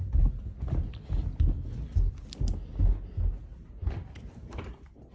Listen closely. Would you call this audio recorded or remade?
recorded